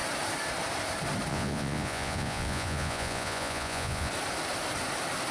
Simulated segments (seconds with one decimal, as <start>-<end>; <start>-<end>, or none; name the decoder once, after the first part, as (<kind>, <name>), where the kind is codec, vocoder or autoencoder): 1.3-4.1 (vocoder, Vocos)